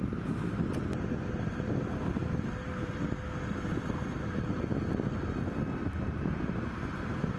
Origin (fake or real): real